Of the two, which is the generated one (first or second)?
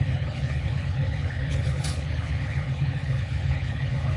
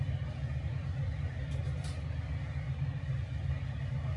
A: first